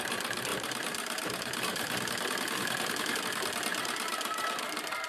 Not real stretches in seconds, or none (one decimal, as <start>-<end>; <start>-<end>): 0.5-3.2; 3.7-4.5